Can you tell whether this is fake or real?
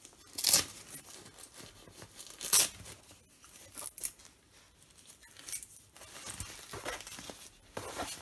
real